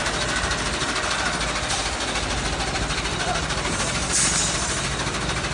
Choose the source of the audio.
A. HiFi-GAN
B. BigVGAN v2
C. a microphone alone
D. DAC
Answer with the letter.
C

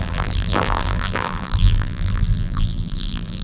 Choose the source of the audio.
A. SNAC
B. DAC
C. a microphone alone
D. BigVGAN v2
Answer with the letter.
D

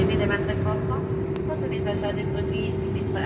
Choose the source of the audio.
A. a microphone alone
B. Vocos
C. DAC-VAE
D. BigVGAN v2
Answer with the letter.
A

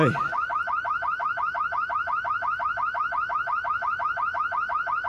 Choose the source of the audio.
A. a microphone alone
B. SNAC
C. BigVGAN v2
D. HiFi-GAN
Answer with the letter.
A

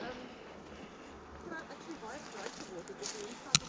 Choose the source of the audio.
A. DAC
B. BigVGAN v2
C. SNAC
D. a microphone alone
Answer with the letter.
D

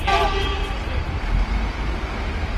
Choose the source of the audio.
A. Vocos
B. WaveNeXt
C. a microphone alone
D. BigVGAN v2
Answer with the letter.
C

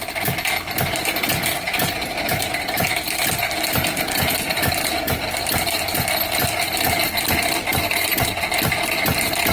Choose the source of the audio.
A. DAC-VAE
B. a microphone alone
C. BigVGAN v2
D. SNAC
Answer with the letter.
B